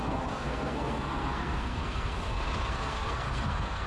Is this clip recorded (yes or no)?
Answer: no